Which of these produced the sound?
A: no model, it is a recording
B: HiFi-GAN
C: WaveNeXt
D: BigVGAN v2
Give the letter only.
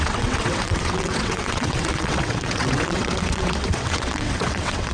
C